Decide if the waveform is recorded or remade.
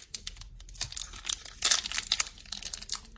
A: recorded